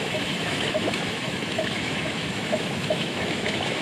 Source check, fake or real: fake